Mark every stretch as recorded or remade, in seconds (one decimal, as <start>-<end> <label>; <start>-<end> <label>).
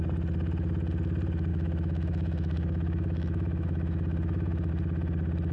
0.0-1.5 recorded; 1.5-4.7 remade; 4.7-5.5 recorded